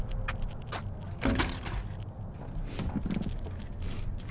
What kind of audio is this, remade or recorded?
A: recorded